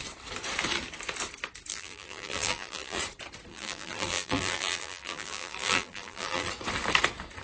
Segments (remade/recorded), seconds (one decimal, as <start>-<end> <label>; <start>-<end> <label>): 0.0-1.7 recorded; 1.7-3.0 remade; 3.0-3.5 recorded; 3.5-6.5 remade; 6.5-7.4 recorded